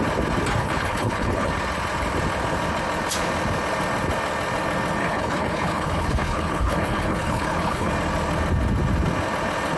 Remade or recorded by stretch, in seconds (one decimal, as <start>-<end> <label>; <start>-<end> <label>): 0.0-0.6 recorded; 0.6-1.5 remade; 1.5-5.0 recorded; 5.0-7.9 remade; 7.9-9.8 recorded